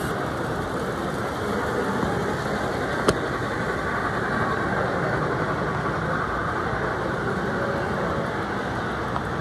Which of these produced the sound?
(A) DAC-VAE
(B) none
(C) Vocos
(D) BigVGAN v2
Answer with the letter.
B